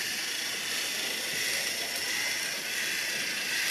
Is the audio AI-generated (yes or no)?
no